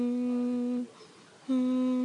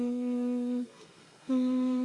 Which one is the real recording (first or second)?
first